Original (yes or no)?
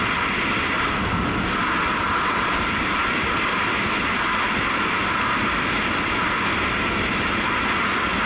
yes